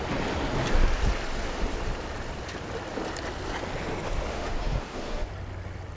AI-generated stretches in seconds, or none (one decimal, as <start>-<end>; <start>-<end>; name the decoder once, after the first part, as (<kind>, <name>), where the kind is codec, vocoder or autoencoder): 4.3-5.3 (autoencoder, DAC-VAE)